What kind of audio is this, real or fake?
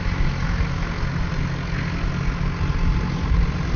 real